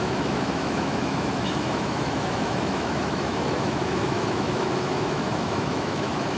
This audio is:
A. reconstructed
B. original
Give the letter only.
A